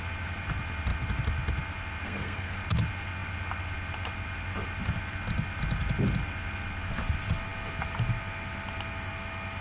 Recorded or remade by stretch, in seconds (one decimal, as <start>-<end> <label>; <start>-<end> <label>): 0.0-2.0 recorded; 2.0-2.6 remade; 2.6-9.6 recorded

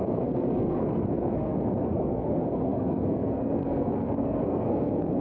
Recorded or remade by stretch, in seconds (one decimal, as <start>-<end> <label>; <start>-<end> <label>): 0.0-5.2 remade

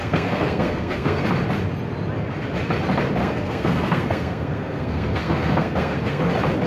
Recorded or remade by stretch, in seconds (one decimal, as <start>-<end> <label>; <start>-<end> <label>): 0.0-1.3 remade; 1.3-3.2 recorded; 3.2-6.2 remade; 6.2-6.7 recorded

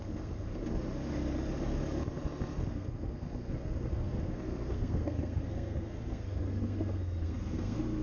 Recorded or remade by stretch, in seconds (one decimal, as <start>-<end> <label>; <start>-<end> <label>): 0.0-0.6 remade; 0.6-2.7 recorded; 2.7-8.0 remade

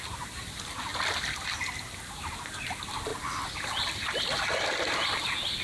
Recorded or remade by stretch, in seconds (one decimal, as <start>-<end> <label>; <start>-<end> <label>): 0.0-5.6 recorded

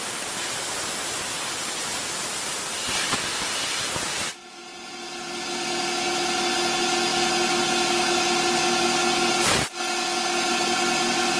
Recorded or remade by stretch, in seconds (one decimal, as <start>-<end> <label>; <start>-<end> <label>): 0.0-11.4 recorded

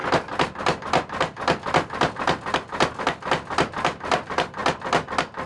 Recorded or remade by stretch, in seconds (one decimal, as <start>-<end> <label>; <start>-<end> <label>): 0.0-5.5 recorded

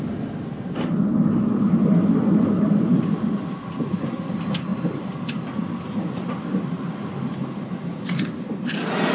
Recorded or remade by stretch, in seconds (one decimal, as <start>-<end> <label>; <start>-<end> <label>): 0.0-9.1 recorded